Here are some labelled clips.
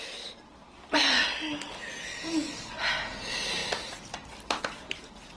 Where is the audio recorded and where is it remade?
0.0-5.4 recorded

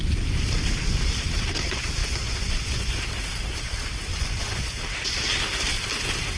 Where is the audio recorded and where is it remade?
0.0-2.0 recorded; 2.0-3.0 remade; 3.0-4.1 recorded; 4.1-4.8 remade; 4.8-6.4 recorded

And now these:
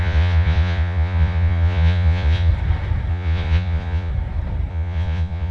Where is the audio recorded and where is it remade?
0.0-2.5 remade; 2.5-3.1 recorded; 3.1-4.1 remade; 4.1-4.7 recorded; 4.7-5.5 remade

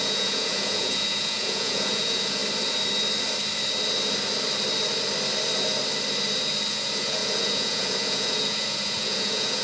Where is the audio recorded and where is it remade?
0.0-2.4 remade; 2.4-6.7 recorded; 6.7-9.6 remade

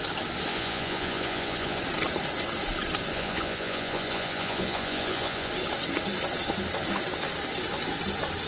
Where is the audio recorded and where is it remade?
0.0-0.5 recorded; 0.5-1.8 remade; 1.8-3.1 recorded; 3.1-5.5 remade; 5.5-8.5 recorded